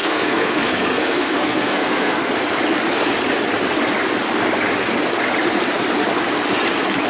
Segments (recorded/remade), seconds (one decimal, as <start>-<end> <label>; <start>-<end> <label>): 0.0-2.3 remade; 2.3-7.1 recorded